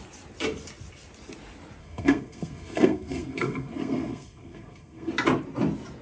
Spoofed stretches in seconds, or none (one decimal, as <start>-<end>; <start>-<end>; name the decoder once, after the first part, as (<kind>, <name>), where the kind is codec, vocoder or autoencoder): 1.8-5.1 (codec, SNAC)